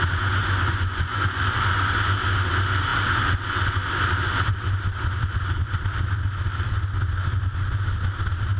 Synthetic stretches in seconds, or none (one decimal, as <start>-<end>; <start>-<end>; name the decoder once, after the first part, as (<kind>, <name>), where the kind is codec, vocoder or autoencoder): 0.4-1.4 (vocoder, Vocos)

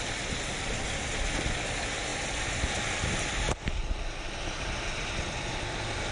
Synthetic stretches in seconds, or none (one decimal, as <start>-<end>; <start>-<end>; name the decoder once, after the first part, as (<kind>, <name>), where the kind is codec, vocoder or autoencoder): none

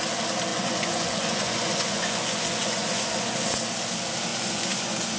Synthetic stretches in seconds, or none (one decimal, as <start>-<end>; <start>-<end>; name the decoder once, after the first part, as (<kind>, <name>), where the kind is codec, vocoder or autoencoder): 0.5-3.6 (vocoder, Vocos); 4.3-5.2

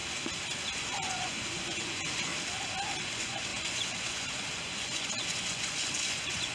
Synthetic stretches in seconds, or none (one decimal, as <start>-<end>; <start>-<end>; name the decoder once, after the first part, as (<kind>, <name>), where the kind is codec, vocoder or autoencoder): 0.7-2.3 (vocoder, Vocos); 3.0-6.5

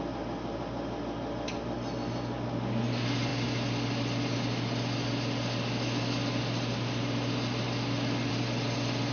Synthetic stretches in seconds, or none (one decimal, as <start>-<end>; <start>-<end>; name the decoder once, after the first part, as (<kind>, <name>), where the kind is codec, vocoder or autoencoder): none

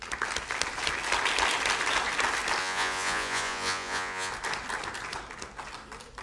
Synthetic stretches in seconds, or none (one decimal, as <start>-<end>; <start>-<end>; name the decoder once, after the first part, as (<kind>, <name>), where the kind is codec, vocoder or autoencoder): 2.6-4.3 (vocoder, Vocos)